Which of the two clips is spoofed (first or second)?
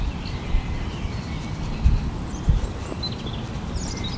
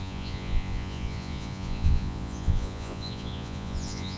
second